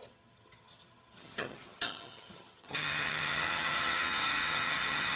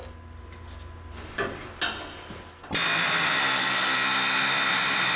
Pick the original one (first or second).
second